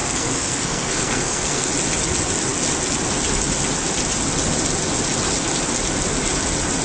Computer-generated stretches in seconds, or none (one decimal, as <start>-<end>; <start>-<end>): 0.0-1.7

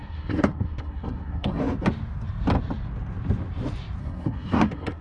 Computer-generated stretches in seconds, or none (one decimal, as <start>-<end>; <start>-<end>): 0.0-1.6; 4.0-5.0

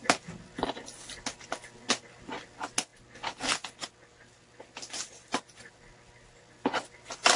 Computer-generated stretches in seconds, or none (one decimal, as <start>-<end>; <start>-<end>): none

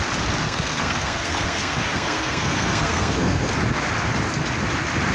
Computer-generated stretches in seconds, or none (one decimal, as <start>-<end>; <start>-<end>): 0.4-3.5

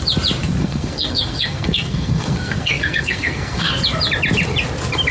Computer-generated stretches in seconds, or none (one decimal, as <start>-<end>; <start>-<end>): 0.6-3.7

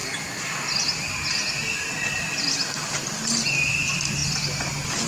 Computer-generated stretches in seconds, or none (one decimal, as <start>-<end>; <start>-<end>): none

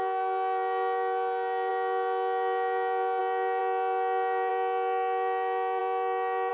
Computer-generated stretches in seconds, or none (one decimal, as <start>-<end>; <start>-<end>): none